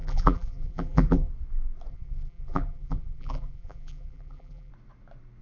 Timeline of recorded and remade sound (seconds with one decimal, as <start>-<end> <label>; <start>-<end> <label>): 0.0-1.3 remade; 1.3-1.9 recorded; 1.9-4.7 remade; 4.7-5.4 recorded